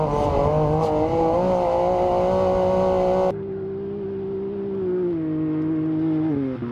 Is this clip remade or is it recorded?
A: recorded